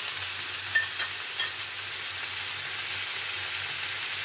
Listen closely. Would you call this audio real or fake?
real